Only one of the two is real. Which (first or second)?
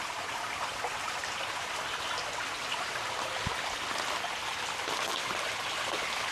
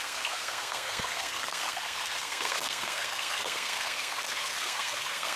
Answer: first